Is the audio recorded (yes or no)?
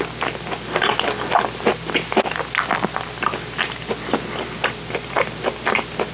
yes